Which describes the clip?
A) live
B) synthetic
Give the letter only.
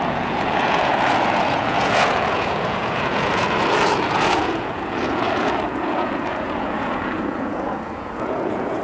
B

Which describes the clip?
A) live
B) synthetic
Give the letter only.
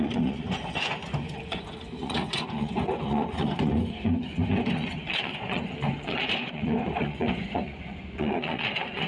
B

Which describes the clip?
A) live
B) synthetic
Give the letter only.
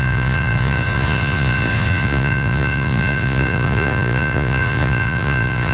B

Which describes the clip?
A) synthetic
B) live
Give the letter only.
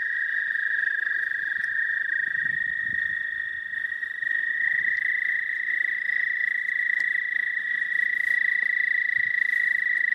B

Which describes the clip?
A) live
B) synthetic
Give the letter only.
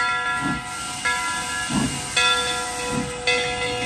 A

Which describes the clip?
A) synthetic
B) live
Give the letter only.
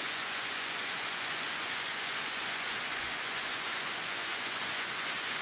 A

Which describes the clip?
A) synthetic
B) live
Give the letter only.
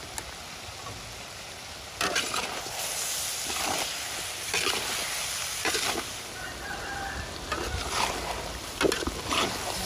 B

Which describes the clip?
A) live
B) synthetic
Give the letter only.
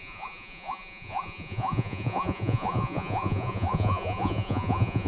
B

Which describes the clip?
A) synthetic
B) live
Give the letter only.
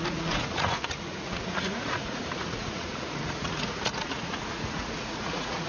A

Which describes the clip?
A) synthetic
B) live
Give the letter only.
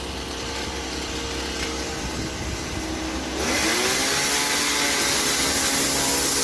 B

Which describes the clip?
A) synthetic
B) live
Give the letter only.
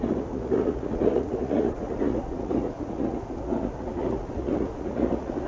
A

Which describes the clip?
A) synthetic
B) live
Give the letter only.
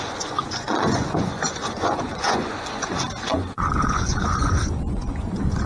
A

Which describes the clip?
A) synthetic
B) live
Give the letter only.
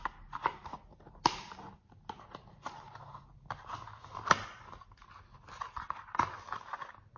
B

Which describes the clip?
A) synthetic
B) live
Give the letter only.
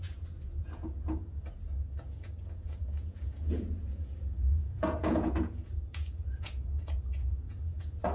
A